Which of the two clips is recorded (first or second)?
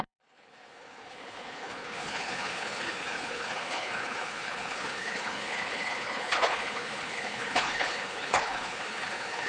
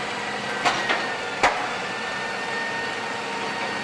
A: second